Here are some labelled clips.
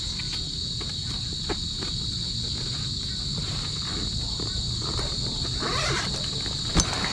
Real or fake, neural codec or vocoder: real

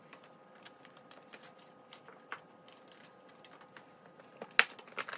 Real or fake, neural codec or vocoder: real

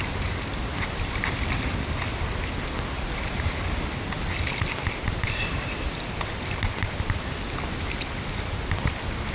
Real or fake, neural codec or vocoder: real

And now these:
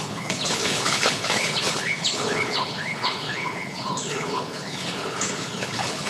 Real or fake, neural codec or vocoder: fake, codec, HILCodec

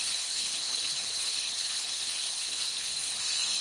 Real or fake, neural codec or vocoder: fake, codec, HILCodec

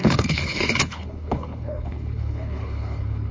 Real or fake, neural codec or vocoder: fake, codec, HILCodec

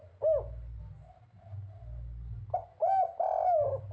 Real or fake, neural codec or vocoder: real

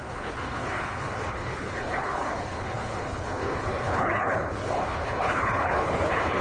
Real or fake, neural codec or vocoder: fake, codec, HILCodec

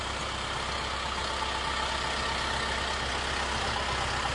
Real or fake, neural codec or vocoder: real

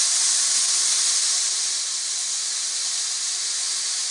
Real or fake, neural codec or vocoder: real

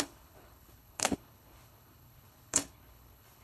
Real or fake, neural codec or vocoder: fake, codec, HILCodec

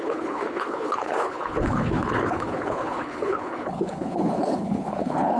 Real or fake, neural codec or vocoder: fake, codec, HILCodec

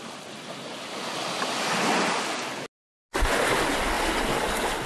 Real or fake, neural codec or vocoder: real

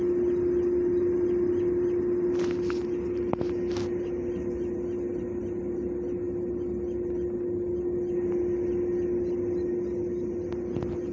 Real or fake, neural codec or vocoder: real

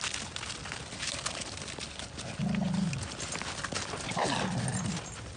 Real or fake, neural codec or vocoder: real